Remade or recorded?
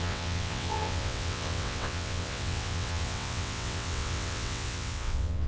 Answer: remade